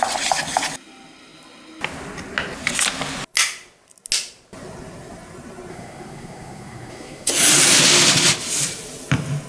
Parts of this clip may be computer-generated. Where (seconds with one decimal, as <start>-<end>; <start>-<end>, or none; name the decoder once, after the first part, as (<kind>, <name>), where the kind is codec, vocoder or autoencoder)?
5.7-7.3 (codec, SNAC)